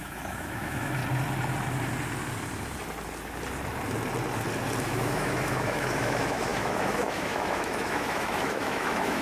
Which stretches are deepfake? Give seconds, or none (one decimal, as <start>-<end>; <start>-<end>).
0.0-1.0; 4.8-9.2